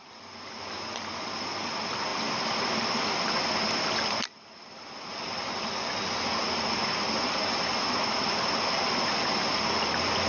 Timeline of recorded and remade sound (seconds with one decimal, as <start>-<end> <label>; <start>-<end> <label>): 0.0-10.3 recorded